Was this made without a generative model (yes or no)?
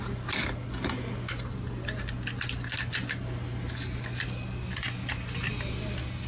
yes